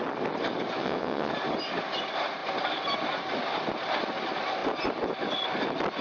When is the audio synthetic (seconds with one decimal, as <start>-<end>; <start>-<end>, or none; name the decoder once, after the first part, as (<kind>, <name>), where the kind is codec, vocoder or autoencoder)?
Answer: 0.8-1.3 (vocoder, WaveNeXt)